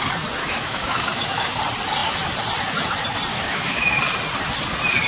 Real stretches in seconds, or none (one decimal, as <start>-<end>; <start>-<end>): 0.0-0.4; 1.6-3.3; 4.0-5.1